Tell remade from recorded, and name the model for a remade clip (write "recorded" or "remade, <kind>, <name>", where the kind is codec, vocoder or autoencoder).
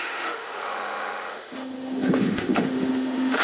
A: remade, autoencoder, DAC-VAE